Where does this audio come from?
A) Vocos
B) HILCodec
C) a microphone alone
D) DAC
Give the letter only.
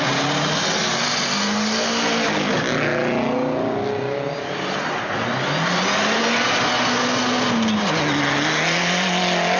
C